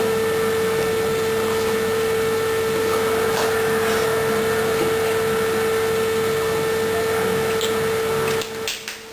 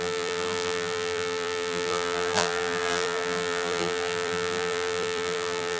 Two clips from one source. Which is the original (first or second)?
first